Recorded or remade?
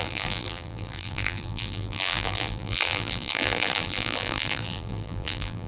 remade